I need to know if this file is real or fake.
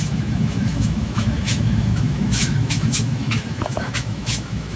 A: fake